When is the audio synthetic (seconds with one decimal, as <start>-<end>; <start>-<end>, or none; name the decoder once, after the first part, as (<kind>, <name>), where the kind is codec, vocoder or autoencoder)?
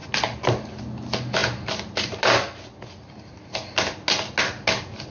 none